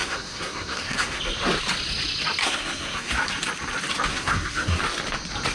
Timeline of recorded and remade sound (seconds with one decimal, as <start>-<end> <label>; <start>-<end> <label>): 0.0-1.2 remade; 1.2-2.4 recorded; 2.4-3.1 remade; 3.1-4.1 recorded; 4.1-4.8 remade; 4.8-5.5 recorded

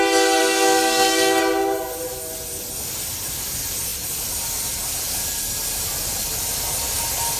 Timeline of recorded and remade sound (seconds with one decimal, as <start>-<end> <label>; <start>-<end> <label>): 0.0-0.4 recorded; 0.4-1.4 remade; 1.4-7.4 recorded

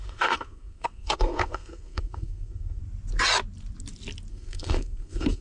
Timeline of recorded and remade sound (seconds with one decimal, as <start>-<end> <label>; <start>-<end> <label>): 0.0-2.8 remade; 2.8-4.3 recorded; 4.3-5.4 remade

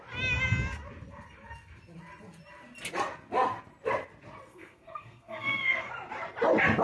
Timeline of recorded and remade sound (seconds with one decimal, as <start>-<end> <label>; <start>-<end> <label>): 0.0-4.5 recorded; 4.5-5.9 remade; 5.9-6.8 recorded

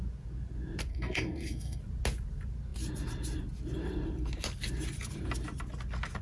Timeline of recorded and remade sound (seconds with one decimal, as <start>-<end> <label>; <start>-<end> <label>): 0.0-0.9 recorded; 0.9-1.8 remade; 1.8-6.2 recorded

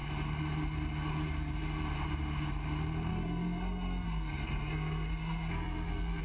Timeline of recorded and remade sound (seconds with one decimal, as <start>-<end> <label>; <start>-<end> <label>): 0.0-3.1 recorded; 3.1-6.2 remade

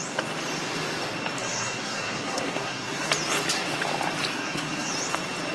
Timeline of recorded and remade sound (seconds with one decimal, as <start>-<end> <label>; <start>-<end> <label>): 0.0-1.4 recorded; 1.4-3.1 remade; 3.1-4.3 recorded; 4.3-4.9 remade; 4.9-5.5 recorded